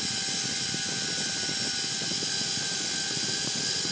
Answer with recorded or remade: recorded